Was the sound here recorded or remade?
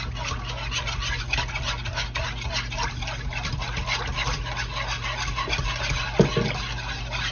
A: recorded